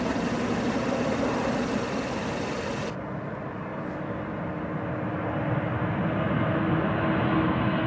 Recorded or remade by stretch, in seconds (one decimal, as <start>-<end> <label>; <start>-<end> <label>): 0.0-7.9 recorded